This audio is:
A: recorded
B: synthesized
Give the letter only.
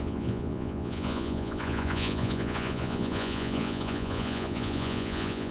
B